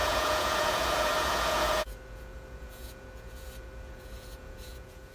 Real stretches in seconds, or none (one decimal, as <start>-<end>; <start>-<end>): none